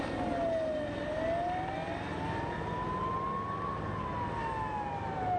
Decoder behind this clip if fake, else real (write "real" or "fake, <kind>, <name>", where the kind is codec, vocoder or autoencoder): real